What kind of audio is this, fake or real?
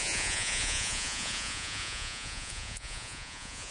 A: fake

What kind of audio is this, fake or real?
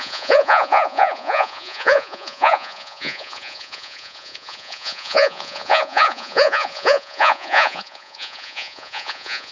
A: fake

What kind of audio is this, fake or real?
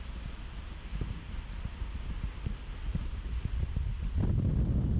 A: real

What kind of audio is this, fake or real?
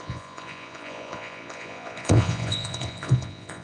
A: fake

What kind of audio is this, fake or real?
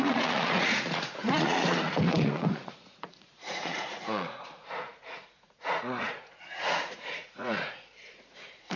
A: fake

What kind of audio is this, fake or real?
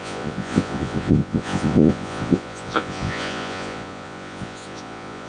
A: fake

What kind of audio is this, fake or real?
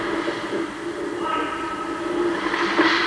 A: real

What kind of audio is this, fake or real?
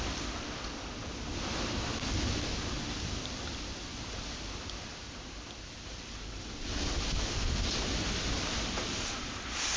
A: real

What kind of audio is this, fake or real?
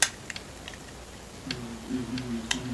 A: real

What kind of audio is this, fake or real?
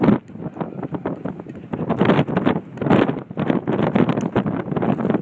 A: real